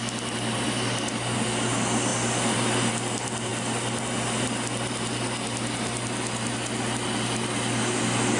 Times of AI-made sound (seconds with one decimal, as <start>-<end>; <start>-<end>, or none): none